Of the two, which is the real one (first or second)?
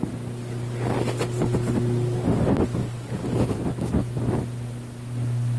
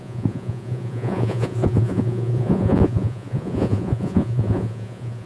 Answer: first